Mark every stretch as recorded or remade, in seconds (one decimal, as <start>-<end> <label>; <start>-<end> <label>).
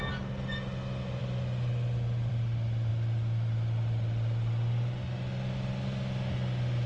0.0-6.9 recorded